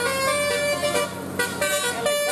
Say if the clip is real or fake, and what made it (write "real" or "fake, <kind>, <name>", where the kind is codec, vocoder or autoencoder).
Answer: real